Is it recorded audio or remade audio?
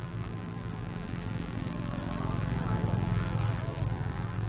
remade